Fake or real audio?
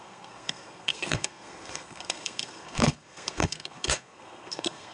fake